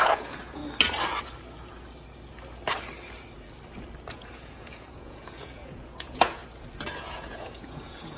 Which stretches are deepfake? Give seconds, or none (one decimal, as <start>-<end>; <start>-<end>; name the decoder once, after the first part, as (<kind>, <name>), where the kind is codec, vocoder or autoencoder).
0.0-0.6 (vocoder, Vocos); 4.1-6.4; 7.0-8.2